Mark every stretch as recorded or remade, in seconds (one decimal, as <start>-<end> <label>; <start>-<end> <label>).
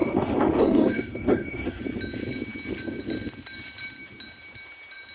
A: 0.0-1.8 remade; 1.8-5.1 recorded